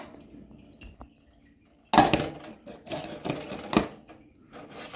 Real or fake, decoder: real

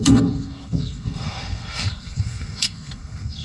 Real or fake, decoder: fake, codec, SNAC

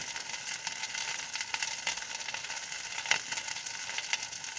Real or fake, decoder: real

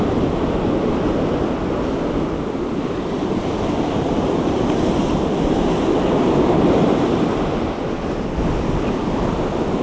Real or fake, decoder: real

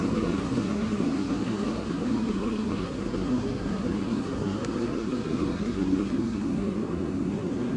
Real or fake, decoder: fake, codec, SNAC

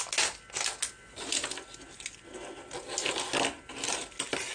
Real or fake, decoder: real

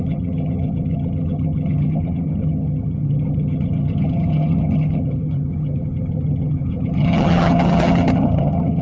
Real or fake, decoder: fake, vocoder, HiFi-GAN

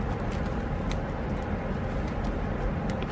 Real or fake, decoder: real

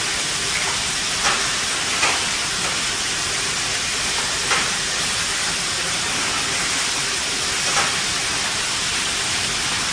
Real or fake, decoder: real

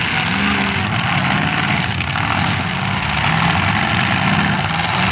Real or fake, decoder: real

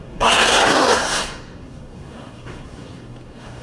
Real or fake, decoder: fake, codec, SNAC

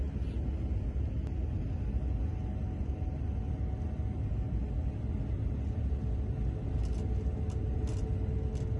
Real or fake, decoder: real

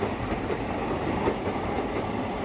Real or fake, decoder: real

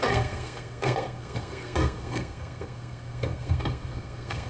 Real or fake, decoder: fake, codec, SNAC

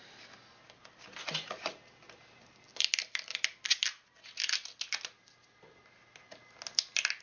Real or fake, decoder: real